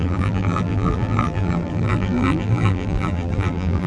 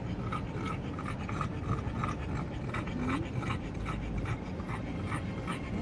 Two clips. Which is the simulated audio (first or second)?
first